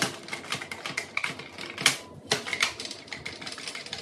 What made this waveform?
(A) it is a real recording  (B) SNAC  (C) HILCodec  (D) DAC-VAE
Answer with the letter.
A